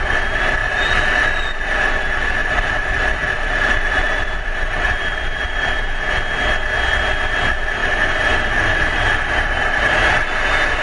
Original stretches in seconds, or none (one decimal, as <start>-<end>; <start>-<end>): 0.0-0.6; 2.0-2.4; 6.1-7.8; 10.0-10.8

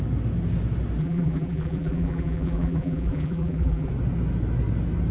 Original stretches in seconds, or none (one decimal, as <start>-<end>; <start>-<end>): 0.0-1.0; 3.9-5.1

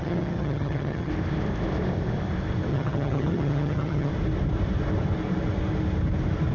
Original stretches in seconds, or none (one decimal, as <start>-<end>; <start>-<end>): 1.1-2.7; 4.1-6.5

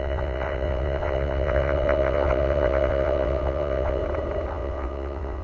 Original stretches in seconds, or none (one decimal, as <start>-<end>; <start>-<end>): 4.0-4.5